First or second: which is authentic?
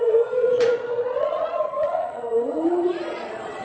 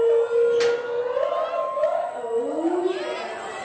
second